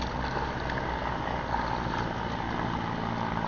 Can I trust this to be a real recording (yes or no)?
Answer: yes